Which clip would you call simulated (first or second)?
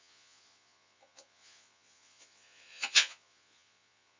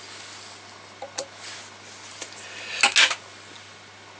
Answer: first